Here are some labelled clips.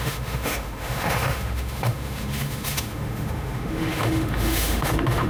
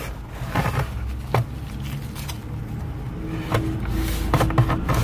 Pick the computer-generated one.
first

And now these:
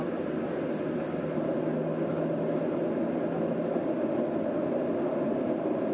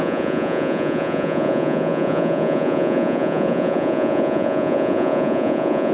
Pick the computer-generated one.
second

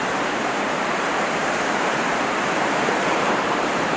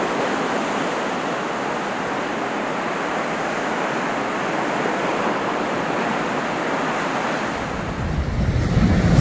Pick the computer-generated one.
first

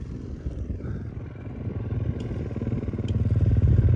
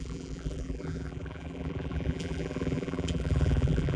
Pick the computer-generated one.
second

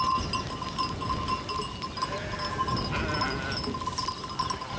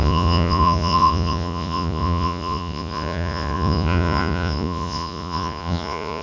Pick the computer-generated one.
second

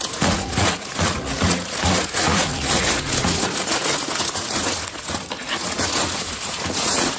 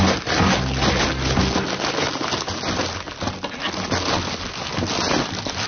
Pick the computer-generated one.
first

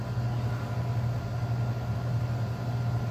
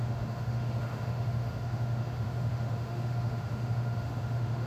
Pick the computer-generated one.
second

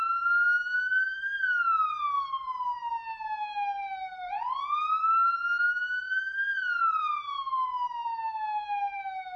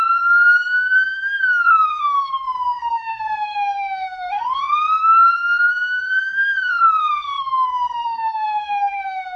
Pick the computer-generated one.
second